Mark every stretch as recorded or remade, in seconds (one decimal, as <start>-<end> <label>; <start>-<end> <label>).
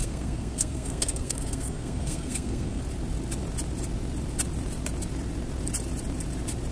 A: 0.0-2.8 remade; 2.8-6.7 recorded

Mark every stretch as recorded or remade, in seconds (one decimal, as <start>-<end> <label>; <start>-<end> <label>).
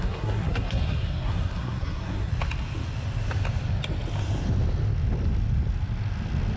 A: 0.0-2.3 remade; 2.3-6.6 recorded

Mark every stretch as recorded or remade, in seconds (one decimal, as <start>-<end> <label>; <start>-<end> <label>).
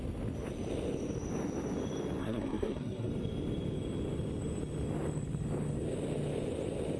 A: 0.0-2.2 recorded; 2.2-3.1 remade; 3.1-7.0 recorded